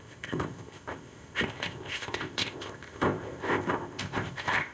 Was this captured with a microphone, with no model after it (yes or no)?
no